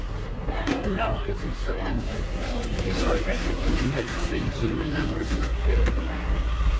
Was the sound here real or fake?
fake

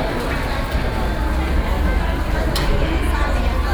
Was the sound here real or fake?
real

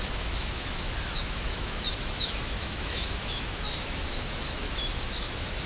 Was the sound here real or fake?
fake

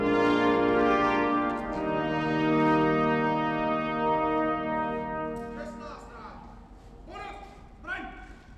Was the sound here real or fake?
real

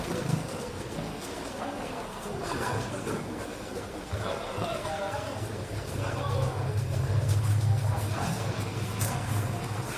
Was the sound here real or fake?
fake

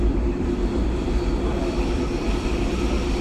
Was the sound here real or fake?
fake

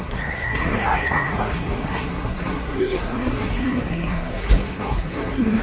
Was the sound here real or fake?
fake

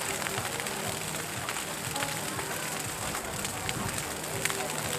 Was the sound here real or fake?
real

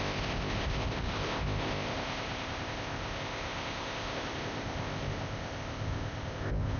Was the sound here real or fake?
fake